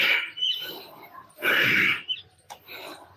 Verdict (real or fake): real